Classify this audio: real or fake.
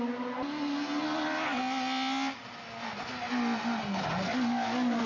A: real